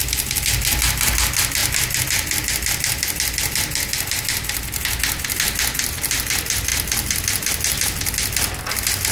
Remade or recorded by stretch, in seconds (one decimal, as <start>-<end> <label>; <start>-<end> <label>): 0.0-9.1 recorded